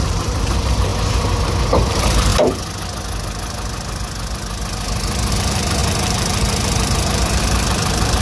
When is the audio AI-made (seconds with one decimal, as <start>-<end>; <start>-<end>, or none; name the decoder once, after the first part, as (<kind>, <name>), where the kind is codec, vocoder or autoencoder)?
0.0-0.9 (vocoder, BigVGAN v2); 1.9-2.3; 5.3-8.2